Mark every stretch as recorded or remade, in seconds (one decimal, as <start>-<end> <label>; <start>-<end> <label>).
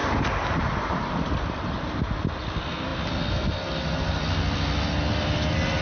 0.0-5.8 recorded